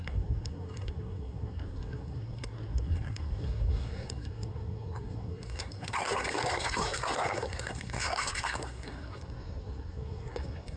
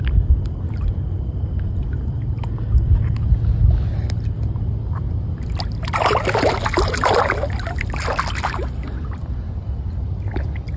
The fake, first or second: first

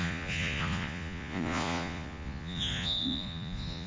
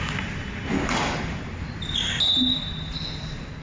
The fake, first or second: first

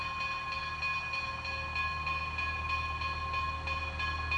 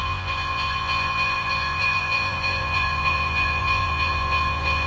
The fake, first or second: second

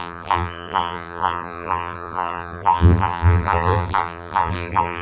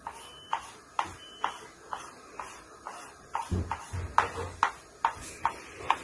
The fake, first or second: first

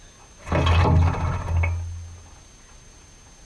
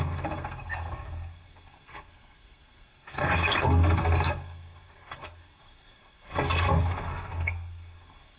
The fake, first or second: second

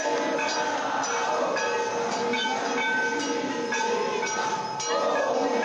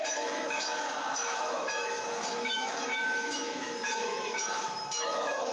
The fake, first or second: second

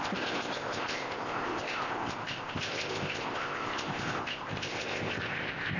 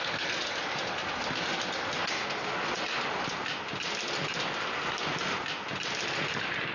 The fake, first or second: first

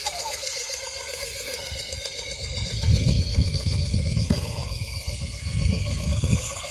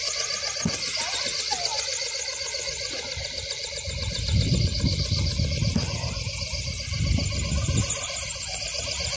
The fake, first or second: first